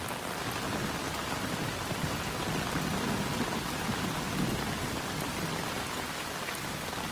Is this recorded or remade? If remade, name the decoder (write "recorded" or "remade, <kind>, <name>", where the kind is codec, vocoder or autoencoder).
recorded